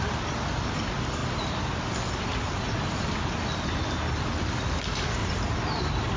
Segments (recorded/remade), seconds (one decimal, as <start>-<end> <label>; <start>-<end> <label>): 0.0-5.2 recorded; 5.2-6.2 remade